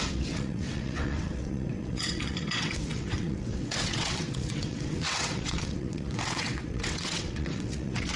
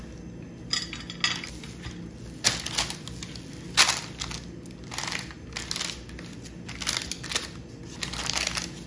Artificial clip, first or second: first